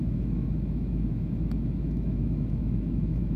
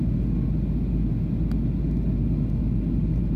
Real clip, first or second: second